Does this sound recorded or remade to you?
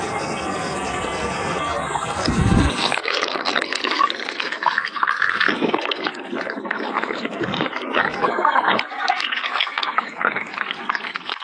remade